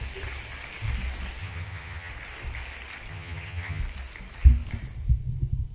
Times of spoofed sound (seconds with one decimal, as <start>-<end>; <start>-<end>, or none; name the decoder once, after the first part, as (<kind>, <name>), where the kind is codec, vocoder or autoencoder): 1.4-2.1 (vocoder, HiFi-GAN); 3.1-3.8